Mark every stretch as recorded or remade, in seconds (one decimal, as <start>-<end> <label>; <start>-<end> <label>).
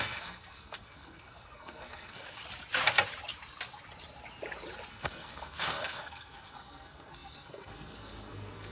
0.0-2.4 remade; 2.4-4.9 recorded; 4.9-8.7 remade